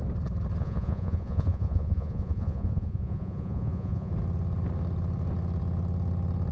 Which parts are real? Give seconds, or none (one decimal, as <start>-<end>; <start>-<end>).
0.0-0.6; 4.1-6.5